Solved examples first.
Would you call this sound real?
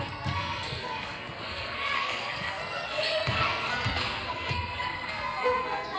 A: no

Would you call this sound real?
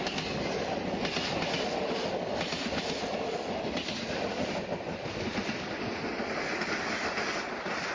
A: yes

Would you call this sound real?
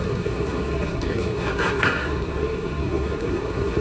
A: no